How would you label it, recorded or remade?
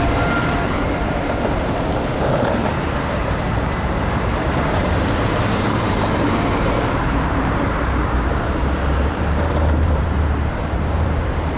remade